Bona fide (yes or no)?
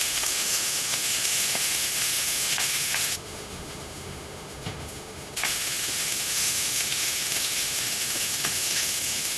no